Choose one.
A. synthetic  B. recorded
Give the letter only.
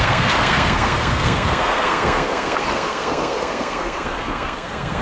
A